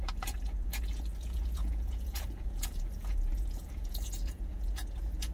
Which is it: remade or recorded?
remade